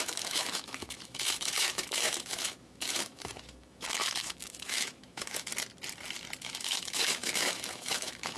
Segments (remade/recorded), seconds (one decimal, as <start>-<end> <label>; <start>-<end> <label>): 0.0-5.5 remade; 5.5-6.4 recorded; 6.4-8.4 remade